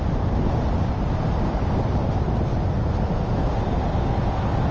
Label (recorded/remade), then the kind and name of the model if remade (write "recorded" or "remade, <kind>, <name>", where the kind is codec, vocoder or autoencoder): recorded